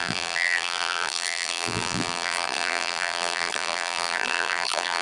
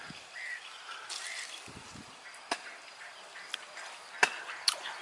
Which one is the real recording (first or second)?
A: second